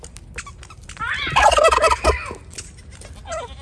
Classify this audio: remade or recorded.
recorded